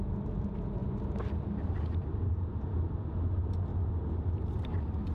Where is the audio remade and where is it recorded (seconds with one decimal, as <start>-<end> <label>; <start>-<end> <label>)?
0.0-5.1 recorded